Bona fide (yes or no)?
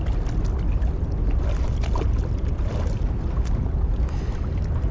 yes